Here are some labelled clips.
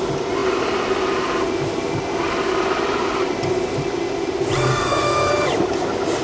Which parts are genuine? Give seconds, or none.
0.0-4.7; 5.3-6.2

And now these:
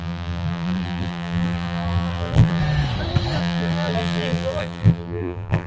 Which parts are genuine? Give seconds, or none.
2.6-3.4

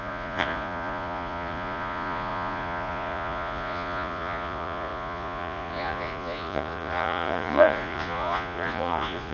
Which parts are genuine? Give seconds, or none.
none

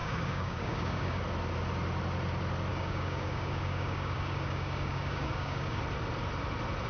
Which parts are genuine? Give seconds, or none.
1.2-2.7; 5.8-6.9

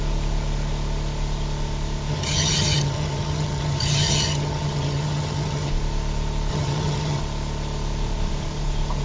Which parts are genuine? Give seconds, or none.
0.0-2.1; 5.7-6.5; 7.2-9.0

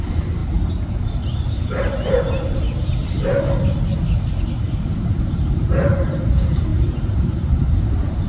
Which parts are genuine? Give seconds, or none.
0.4-5.0

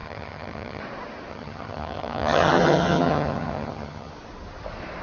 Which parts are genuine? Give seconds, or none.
0.8-1.3; 4.1-5.0